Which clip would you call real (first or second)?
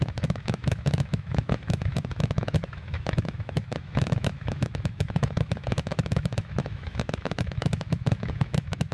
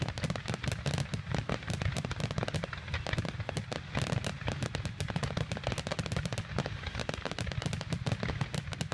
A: second